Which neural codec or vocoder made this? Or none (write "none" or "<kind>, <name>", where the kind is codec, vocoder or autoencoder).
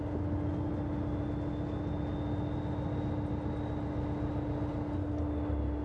none